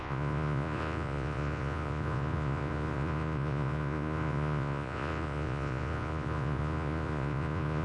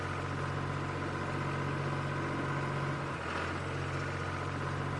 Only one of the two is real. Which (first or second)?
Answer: second